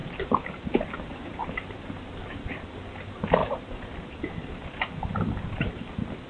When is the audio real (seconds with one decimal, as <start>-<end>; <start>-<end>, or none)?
1.9-6.3